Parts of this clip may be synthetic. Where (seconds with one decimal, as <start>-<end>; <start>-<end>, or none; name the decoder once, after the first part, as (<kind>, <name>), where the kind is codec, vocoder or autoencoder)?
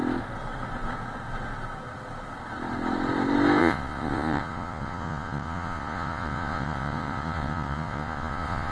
3.6-8.7 (vocoder, Vocos)